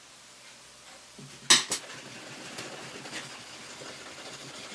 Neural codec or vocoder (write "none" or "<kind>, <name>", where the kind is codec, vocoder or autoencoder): none